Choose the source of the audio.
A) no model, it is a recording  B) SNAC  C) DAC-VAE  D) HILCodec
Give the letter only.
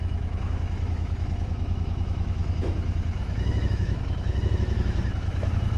C